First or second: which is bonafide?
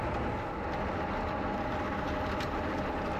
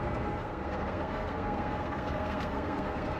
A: first